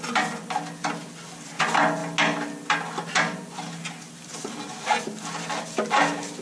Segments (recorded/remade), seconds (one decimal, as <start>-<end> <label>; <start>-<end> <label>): 0.0-6.4 recorded